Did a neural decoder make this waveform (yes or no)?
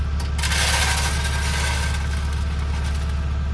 no